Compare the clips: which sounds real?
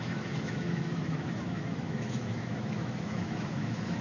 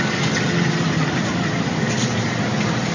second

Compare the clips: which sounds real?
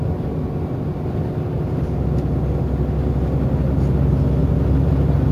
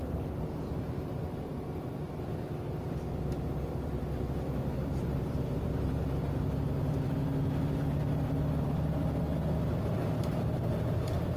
first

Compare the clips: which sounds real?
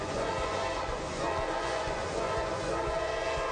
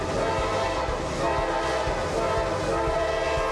second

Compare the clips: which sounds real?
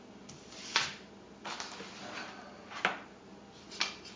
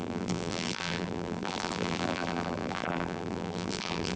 first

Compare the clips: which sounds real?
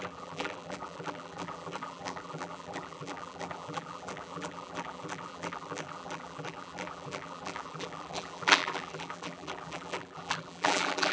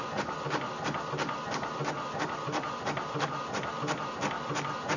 second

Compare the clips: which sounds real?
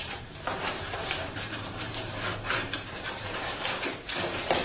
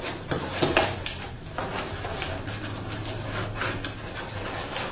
second